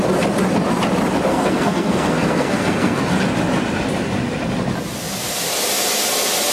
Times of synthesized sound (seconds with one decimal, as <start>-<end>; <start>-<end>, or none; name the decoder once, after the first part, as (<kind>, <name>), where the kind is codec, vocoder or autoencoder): 1.3-3.0 (codec, SNAC)